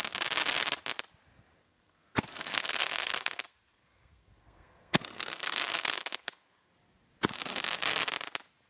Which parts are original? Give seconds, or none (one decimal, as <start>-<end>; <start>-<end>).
0.0-1.6; 6.7-8.7

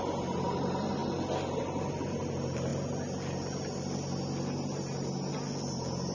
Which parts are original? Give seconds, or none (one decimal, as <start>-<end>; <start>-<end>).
0.0-6.1

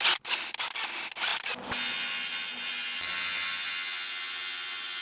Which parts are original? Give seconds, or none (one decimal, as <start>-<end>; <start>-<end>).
0.0-5.0

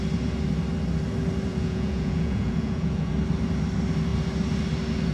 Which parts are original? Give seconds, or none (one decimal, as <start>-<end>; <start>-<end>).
0.0-1.5; 3.1-5.1

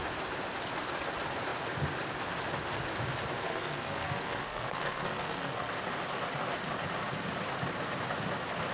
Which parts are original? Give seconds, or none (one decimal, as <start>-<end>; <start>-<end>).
0.0-3.5; 5.7-8.7

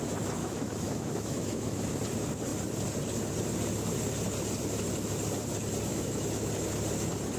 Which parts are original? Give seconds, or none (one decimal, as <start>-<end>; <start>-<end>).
0.0-0.4; 2.0-5.9; 6.5-7.4

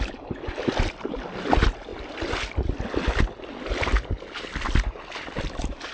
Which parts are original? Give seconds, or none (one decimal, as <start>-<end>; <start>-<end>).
0.0-5.9

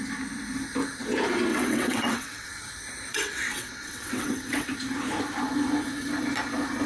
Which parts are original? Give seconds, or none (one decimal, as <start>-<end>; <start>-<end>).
0.0-1.5; 2.5-3.1; 4.7-6.9